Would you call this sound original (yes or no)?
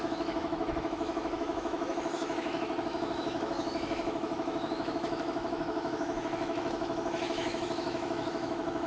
no